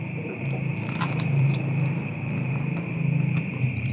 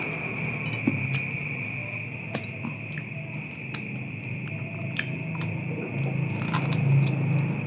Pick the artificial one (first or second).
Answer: first